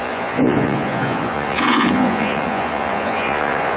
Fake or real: fake